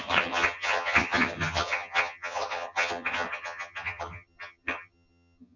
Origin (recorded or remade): remade